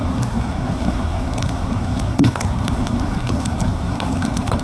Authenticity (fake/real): fake